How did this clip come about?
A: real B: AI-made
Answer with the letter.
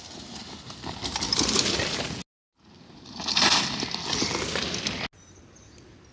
A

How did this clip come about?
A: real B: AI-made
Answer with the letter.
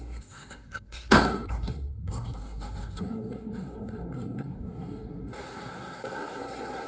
B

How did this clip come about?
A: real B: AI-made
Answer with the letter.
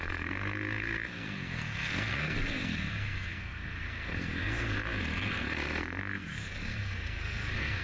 B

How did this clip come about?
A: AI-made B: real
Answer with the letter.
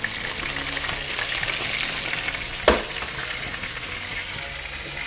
B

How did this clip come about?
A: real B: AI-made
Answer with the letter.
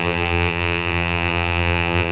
B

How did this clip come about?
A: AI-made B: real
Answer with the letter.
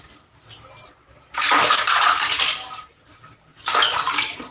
B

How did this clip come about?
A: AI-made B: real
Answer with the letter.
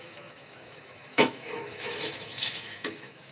A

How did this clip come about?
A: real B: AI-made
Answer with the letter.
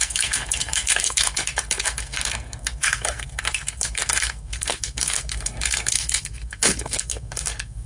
B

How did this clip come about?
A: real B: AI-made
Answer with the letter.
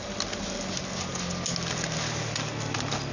A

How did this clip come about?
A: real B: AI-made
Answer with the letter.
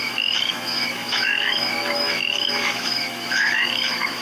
B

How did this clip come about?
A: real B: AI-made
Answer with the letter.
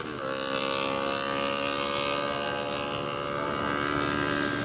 A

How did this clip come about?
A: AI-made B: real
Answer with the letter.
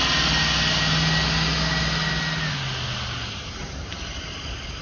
B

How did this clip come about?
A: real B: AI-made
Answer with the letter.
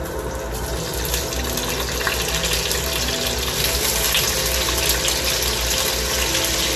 A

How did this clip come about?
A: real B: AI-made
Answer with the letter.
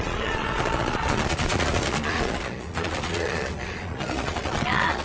B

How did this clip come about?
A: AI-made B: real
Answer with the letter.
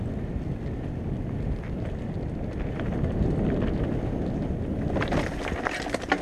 B